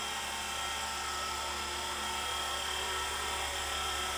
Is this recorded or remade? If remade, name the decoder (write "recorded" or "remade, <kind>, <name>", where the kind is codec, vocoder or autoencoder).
recorded